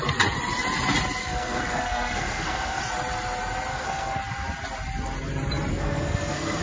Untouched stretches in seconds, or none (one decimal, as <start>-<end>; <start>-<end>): 0.0-1.2; 2.8-3.7; 4.2-5.7